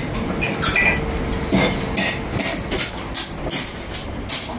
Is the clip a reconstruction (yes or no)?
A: no